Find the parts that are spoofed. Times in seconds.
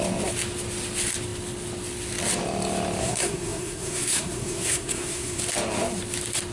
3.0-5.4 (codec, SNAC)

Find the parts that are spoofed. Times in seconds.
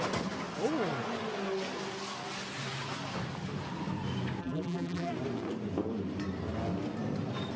4.4-5.1 (vocoder, BigVGAN v2)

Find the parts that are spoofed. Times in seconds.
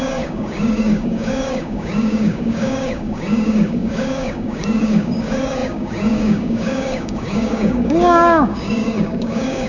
0.0-9.7 (codec, DAC)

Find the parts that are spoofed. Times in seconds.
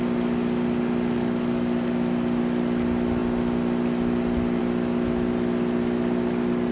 none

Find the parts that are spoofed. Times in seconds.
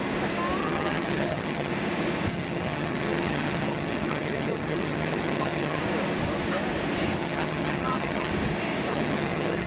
0.6-1.7 (vocoder, HiFi-GAN); 2.3-5.8; 7.2-8.3; 8.9-9.7